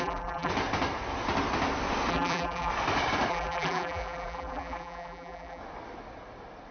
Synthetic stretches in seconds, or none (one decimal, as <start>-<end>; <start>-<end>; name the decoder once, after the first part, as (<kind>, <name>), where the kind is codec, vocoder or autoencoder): 0.0-0.5 (vocoder, BigVGAN v2); 2.1-2.7; 3.3-5.6